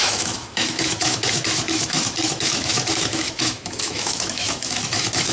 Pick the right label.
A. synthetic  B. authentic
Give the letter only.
A